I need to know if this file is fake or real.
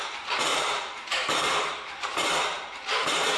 fake